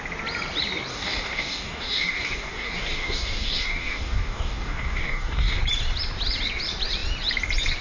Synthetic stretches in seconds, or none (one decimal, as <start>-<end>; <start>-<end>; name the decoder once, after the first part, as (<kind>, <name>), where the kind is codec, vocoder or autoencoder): 0.9-5.6 (codec, DAC)